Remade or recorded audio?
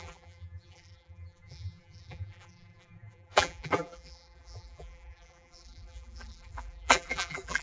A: remade